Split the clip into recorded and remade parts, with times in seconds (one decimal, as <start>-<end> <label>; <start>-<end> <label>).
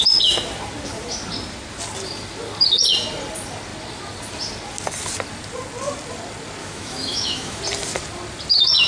0.0-6.6 recorded; 6.6-7.6 remade; 7.6-8.9 recorded